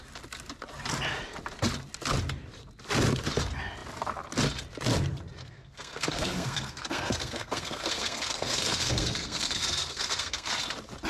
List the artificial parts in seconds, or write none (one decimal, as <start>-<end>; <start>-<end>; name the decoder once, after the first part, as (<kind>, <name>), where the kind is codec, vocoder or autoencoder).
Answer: 5.4-10.5 (codec, SNAC)